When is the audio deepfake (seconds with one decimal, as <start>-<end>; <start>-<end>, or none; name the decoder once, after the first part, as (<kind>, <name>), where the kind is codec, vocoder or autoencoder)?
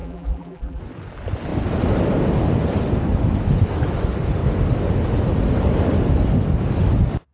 0.0-0.8 (vocoder, BigVGAN v2)